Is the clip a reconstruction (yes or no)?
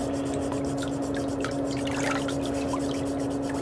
no